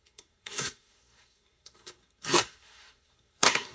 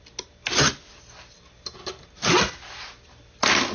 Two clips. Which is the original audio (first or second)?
second